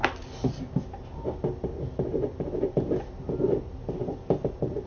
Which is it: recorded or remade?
recorded